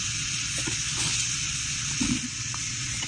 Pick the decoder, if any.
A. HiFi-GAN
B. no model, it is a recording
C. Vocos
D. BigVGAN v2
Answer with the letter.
C